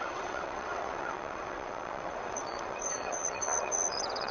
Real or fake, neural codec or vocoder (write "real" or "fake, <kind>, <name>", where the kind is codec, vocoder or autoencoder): fake, vocoder, WaveNeXt